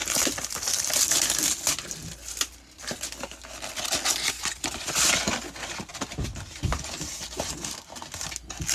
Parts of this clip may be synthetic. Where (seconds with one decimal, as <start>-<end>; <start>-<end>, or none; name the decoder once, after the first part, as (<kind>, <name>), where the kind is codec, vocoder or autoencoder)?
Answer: 4.3-8.7 (vocoder, BigVGAN v2)